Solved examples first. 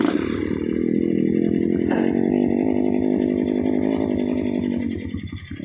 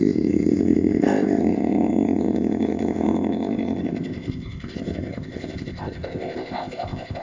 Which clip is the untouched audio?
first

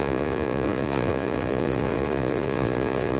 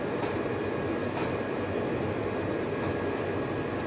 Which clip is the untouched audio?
second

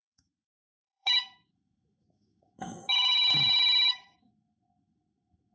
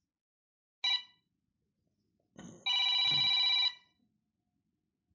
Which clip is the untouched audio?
second